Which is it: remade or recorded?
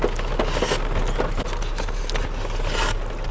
recorded